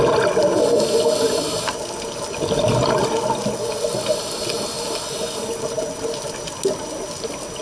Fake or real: real